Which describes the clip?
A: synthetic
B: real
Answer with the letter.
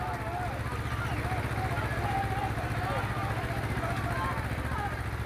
B